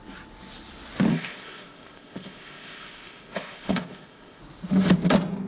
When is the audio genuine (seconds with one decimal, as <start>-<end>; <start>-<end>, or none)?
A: 0.0-1.1; 4.4-5.5